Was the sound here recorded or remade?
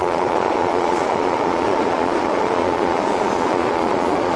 remade